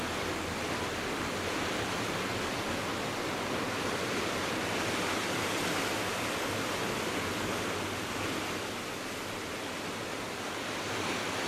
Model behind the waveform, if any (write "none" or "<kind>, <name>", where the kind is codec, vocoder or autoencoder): none